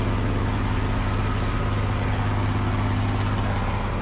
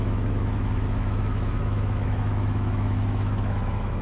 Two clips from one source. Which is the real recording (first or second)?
first